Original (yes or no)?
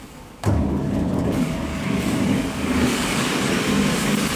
no